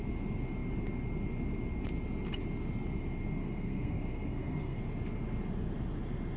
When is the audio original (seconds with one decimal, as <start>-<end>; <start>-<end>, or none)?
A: 0.0-3.4; 4.8-6.4